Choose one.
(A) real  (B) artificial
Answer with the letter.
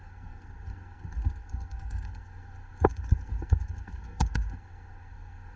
B